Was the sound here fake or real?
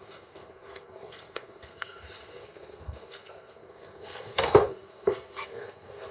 fake